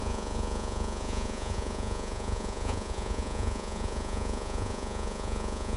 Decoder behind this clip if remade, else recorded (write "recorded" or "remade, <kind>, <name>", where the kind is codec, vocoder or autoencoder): remade, vocoder, Vocos